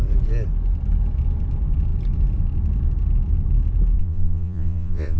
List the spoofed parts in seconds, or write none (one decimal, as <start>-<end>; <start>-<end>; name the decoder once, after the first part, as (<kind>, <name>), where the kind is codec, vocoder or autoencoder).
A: 4.0-5.2 (vocoder, Vocos)